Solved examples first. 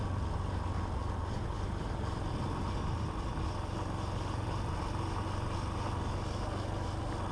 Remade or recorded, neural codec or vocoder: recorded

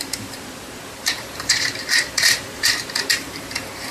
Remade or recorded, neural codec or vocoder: remade, vocoder, BigVGAN v2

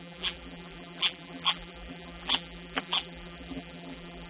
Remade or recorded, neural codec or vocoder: remade, vocoder, BigVGAN v2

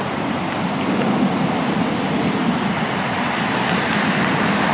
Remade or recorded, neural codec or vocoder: recorded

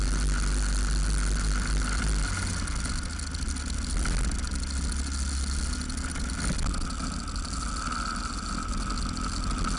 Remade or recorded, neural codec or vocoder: recorded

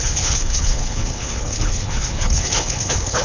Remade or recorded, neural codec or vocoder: remade, codec, HILCodec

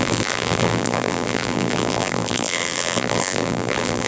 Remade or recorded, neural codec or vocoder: remade, vocoder, BigVGAN v2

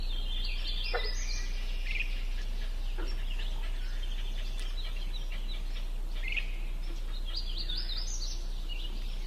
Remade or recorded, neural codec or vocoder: recorded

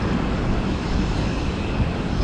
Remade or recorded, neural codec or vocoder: remade, codec, DAC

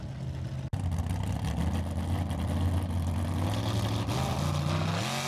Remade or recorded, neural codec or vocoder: recorded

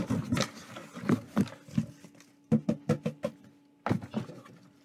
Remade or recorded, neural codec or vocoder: recorded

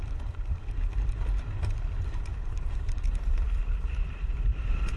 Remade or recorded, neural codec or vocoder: remade, vocoder, BigVGAN v2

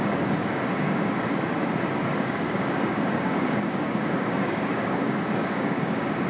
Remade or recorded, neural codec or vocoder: remade, codec, DAC